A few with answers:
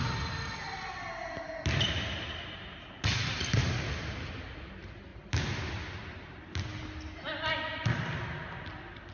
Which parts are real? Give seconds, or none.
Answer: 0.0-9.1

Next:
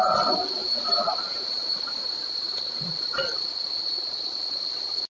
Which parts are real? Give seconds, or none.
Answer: 0.0-0.6; 2.6-5.1

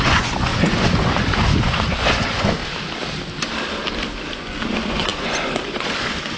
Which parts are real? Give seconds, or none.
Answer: 2.6-4.3

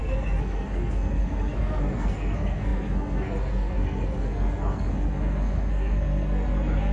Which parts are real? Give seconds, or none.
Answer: none

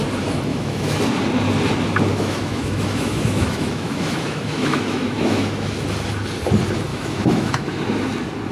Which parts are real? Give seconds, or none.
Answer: 0.0-0.5; 1.0-2.1; 5.7-6.9; 7.8-8.5

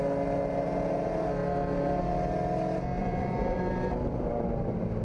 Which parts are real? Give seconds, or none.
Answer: 0.0-3.0; 3.6-5.0

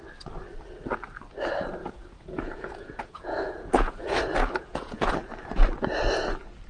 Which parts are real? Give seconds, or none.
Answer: 0.0-1.8; 5.1-6.7